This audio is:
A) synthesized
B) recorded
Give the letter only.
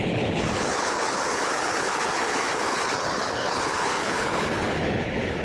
A